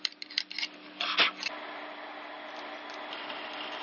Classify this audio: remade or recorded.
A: remade